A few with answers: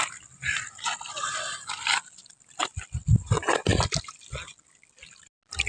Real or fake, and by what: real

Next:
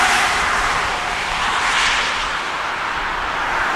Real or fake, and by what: fake, vocoder, BigVGAN v2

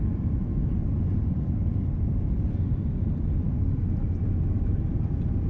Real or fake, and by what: fake, vocoder, BigVGAN v2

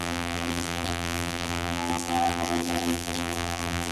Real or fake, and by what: fake, vocoder, BigVGAN v2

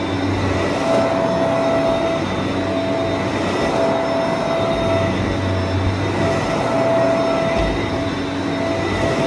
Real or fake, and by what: real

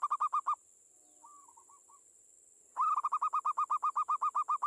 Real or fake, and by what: real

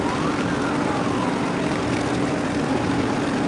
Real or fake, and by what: real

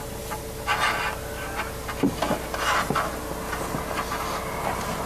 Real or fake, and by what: real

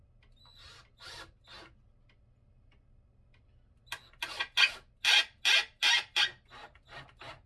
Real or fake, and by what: real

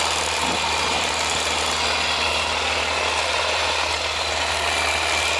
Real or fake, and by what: real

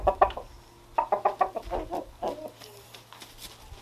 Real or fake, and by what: real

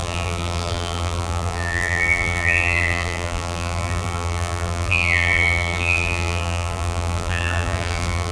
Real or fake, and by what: fake, vocoder, BigVGAN v2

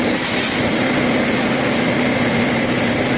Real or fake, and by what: fake, vocoder, BigVGAN v2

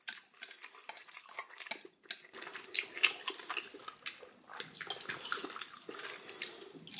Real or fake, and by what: real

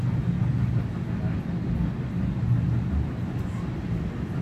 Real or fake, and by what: real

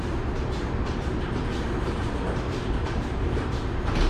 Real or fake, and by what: fake, vocoder, BigVGAN v2